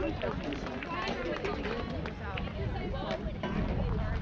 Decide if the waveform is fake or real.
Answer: real